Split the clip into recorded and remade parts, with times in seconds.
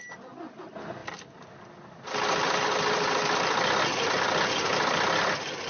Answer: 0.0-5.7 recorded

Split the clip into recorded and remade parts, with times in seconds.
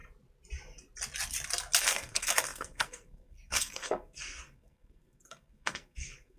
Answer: 0.0-1.8 recorded; 1.8-6.4 remade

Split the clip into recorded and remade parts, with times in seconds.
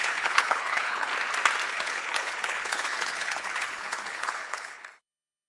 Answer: 0.0-1.1 remade; 1.1-1.7 recorded; 1.7-5.5 remade